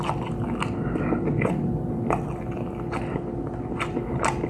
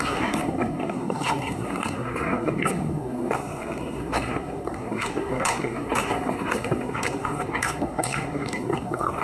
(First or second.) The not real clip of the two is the second